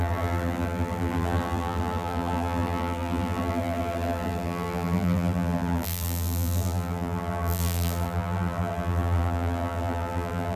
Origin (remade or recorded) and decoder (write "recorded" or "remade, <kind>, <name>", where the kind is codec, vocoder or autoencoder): remade, vocoder, BigVGAN v2